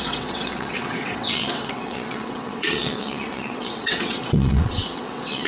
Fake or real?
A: fake